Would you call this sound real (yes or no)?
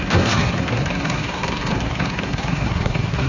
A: no